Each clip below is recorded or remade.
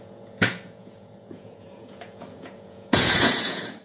remade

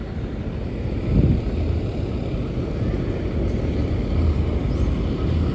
recorded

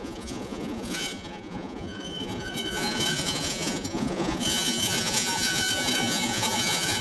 remade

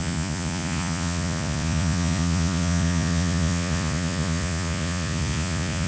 remade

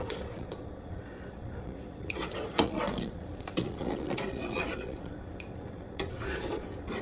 remade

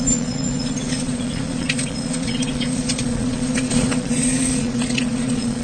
remade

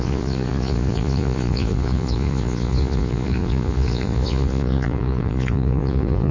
remade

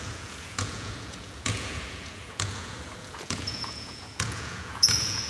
remade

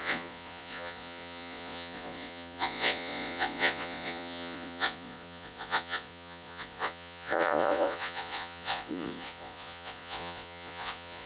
remade